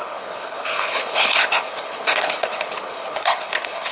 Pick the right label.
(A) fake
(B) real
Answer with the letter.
A